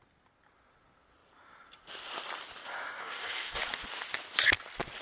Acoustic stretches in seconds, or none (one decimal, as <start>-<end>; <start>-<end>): 0.0-3.0; 3.6-5.0